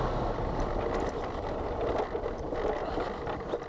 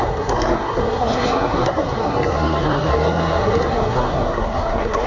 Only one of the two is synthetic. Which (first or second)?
second